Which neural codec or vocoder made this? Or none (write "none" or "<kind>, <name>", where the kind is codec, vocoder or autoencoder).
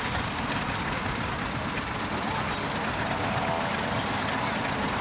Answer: none